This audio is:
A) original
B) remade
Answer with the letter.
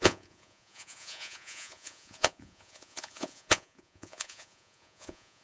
B